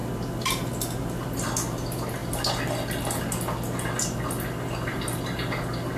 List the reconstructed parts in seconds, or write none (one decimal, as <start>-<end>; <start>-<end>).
none